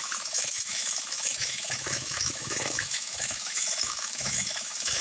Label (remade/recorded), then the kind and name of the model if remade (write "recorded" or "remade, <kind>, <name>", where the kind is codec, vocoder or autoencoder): remade, autoencoder, DAC-VAE